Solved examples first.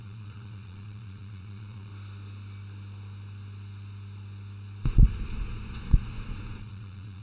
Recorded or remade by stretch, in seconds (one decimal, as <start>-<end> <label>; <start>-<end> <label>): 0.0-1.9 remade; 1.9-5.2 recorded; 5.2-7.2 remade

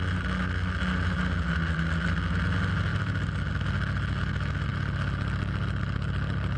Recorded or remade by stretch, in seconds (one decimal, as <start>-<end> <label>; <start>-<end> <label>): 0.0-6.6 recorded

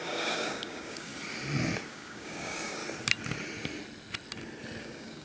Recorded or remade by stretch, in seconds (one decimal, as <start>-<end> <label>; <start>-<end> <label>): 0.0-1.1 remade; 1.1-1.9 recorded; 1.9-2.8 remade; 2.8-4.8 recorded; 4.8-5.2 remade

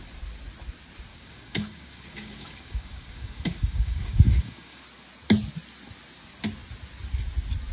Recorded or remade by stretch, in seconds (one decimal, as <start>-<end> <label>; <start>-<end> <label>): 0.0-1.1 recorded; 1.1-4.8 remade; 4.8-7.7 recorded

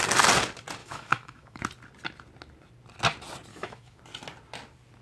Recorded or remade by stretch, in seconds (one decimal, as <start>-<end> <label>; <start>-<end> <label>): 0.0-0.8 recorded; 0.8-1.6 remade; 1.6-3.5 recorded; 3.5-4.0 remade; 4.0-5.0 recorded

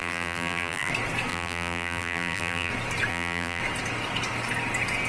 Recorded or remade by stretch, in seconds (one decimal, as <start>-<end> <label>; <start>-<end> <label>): 0.0-0.9 remade; 0.9-1.3 recorded; 1.3-2.7 remade; 2.7-3.1 recorded; 3.1-3.6 remade; 3.6-5.1 recorded